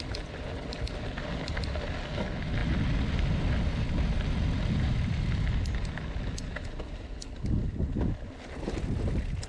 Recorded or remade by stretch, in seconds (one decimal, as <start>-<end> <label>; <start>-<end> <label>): 0.0-9.5 recorded